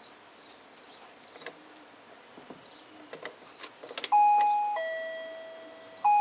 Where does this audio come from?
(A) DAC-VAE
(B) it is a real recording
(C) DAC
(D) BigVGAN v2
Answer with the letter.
B